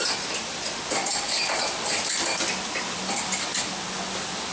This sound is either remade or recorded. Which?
recorded